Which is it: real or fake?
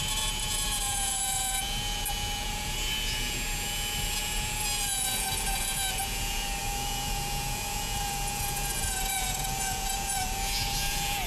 fake